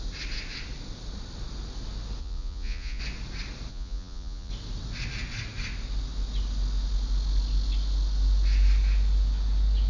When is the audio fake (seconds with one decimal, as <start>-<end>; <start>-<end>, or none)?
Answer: 2.2-3.0; 3.7-4.5